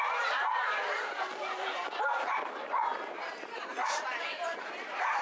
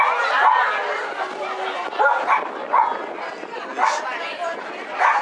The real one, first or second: second